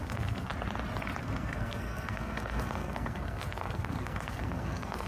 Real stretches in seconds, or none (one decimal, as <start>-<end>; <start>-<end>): 0.5-1.2